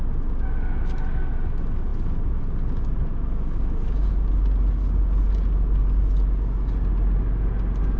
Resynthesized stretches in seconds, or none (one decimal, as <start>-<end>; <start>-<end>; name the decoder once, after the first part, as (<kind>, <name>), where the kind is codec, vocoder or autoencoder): none